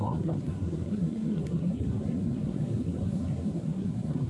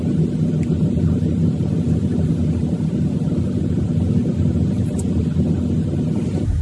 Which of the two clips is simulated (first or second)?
first